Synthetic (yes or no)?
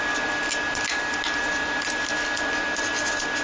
no